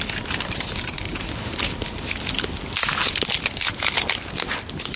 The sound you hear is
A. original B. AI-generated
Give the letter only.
A